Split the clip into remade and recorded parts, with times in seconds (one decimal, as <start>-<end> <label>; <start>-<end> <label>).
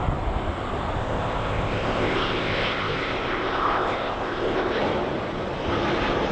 0.0-1.0 recorded; 1.0-4.8 remade; 4.8-6.3 recorded